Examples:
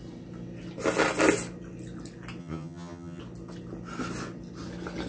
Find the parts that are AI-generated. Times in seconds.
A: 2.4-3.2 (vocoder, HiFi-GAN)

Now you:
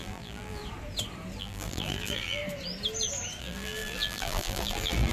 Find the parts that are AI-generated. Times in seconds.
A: 0.0-0.6 (vocoder, BigVGAN v2); 1.4-2.4; 3.4-5.1